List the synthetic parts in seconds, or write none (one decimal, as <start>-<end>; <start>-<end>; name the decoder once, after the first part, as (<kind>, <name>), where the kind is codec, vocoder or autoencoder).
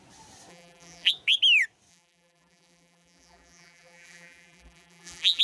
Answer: 0.5-1.1 (vocoder, BigVGAN v2); 1.9-5.4